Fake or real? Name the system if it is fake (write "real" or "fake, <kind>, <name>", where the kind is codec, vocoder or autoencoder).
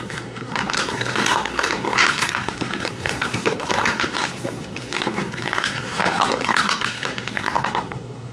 fake, codec, SNAC